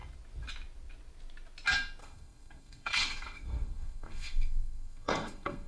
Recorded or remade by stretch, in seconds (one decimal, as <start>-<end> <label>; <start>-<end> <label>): 0.0-2.0 recorded; 2.0-5.7 remade